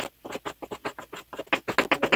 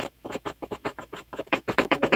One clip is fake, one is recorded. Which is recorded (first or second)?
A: first